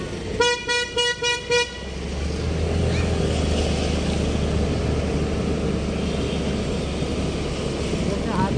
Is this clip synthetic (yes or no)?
no